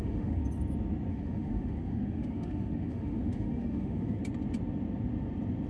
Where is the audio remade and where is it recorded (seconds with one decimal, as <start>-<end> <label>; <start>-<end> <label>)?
0.0-0.4 remade; 0.4-1.1 recorded; 1.1-4.2 remade; 4.2-5.7 recorded